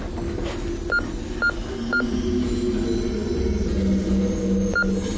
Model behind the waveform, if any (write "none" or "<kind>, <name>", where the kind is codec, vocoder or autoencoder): none